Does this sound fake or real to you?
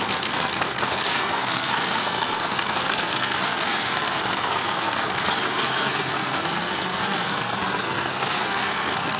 fake